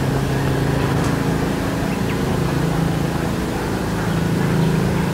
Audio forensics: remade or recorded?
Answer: recorded